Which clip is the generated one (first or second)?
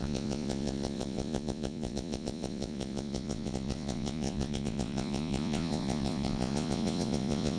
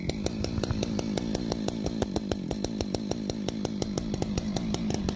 first